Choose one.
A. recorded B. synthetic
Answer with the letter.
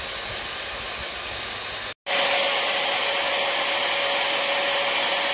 A